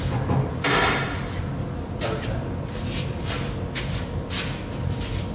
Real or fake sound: real